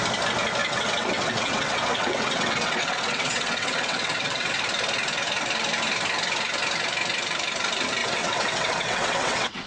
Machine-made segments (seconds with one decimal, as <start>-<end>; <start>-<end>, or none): 0.6-4.5; 8.0-9.7